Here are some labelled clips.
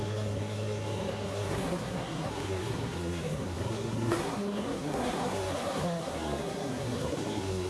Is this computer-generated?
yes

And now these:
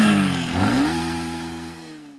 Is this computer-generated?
yes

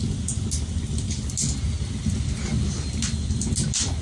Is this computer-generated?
no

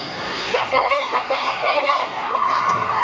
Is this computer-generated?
yes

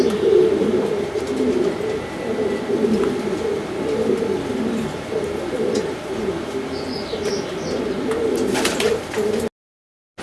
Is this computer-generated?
no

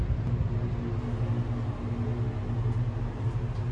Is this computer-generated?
no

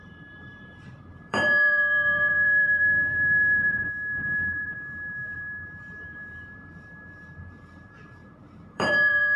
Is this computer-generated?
yes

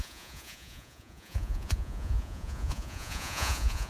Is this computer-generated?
yes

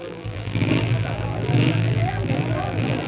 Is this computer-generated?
yes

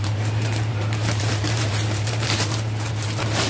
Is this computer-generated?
yes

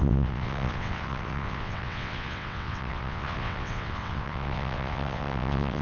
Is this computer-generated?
yes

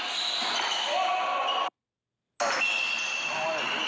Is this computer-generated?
no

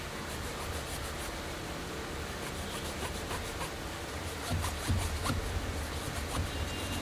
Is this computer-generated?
no